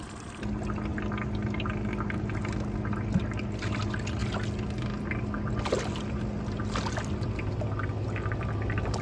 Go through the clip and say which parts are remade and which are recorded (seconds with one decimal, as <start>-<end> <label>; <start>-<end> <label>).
0.0-9.0 recorded